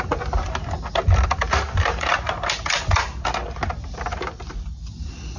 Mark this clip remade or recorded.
recorded